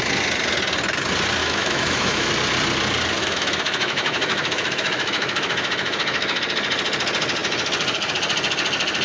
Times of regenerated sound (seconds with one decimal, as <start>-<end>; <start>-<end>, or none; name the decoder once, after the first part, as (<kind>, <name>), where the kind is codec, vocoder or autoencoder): 1.4-2.3 (autoencoder, DAC-VAE); 3.2-6.4